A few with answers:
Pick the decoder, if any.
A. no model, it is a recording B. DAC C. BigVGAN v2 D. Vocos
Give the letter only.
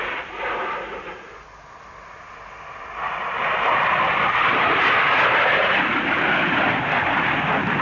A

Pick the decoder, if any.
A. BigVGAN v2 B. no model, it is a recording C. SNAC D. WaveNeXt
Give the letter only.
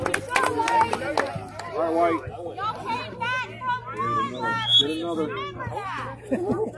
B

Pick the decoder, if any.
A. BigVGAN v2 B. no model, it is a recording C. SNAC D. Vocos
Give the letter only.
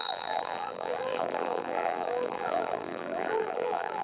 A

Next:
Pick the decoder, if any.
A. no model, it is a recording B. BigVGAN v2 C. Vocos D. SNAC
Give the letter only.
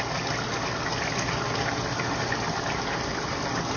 A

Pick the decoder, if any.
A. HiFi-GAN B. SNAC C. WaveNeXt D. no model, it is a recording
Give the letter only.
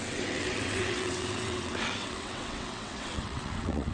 C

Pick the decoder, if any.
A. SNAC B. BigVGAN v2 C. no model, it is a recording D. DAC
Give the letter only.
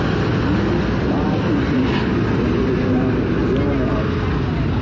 C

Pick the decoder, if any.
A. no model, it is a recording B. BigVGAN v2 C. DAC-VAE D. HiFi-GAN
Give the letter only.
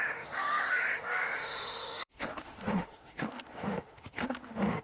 C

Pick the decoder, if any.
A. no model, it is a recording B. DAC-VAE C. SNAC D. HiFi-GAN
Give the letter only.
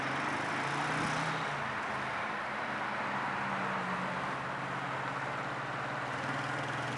A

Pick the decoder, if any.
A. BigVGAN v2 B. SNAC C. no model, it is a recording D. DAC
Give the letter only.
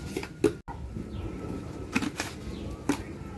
C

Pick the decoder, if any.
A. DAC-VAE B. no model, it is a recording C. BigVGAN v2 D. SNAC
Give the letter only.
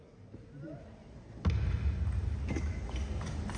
B